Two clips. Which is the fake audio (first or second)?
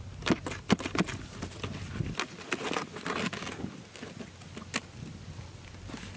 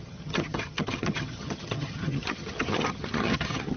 second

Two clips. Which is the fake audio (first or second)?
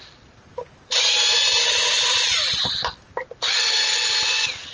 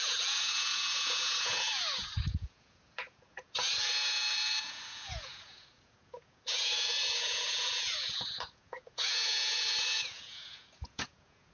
second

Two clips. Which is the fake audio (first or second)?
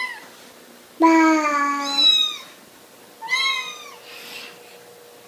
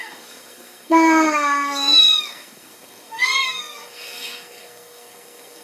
second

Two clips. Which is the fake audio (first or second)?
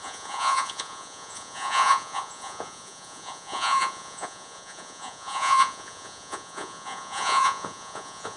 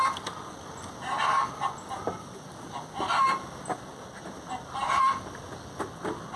first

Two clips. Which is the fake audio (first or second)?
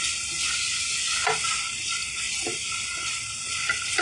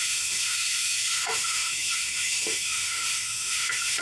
second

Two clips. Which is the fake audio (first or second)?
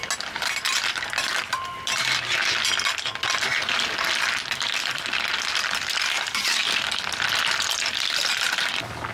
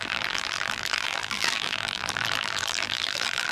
second